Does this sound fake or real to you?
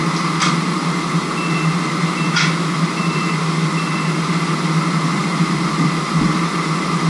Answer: real